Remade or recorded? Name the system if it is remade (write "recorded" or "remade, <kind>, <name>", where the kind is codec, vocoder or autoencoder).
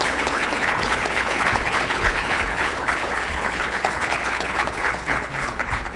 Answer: remade, codec, HILCodec